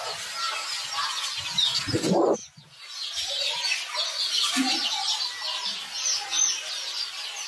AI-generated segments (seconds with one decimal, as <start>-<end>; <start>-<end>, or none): 6.3-7.1